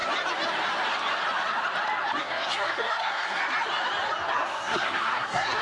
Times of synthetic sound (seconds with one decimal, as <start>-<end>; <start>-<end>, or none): 2.2-3.4; 4.3-5.6